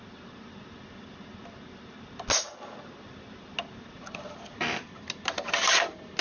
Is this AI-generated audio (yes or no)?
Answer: no